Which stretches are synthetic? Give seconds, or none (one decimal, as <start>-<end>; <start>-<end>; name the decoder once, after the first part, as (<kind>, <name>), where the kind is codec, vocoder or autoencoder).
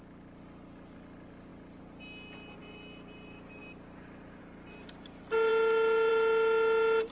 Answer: none